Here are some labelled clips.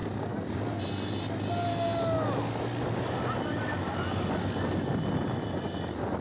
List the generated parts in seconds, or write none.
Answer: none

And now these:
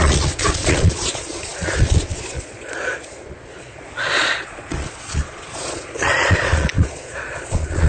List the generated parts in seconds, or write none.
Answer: 0.0-7.9 (vocoder, Vocos)